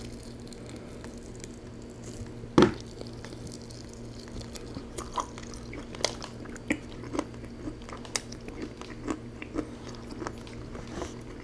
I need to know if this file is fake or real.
real